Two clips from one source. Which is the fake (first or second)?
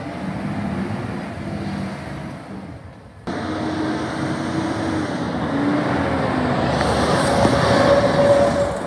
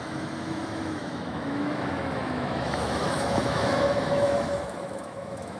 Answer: second